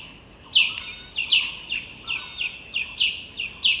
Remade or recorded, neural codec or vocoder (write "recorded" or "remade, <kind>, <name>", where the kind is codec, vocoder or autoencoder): recorded